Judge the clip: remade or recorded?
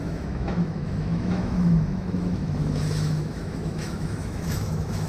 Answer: remade